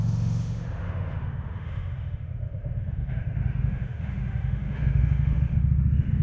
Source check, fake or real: fake